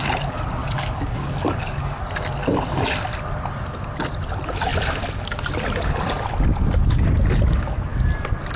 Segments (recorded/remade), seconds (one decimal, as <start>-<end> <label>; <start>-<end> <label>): 0.0-0.6 recorded; 0.6-2.0 remade; 2.0-8.6 recorded